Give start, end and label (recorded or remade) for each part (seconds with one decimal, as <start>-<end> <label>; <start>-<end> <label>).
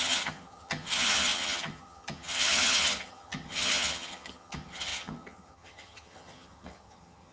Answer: 0.0-7.3 remade